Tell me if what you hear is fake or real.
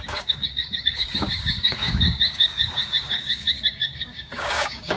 fake